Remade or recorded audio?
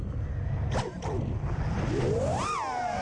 recorded